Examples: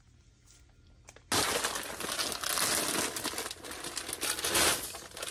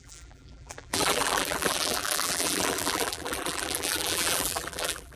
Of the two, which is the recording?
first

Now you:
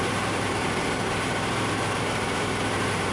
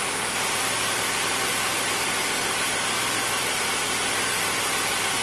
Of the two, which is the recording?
second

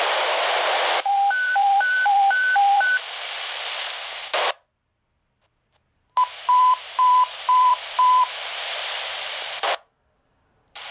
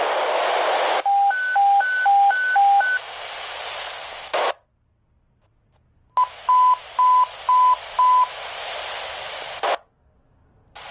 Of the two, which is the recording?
second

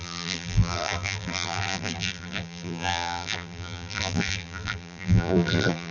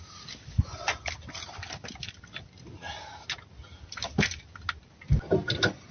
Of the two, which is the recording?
second